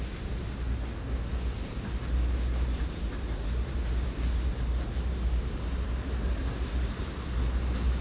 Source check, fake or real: real